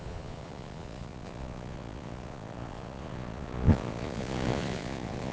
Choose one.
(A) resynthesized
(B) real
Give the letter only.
A